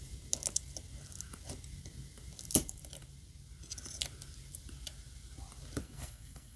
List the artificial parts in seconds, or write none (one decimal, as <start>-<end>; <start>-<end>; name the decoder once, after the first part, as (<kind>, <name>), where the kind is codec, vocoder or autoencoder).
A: 5.8-6.6 (codec, SNAC)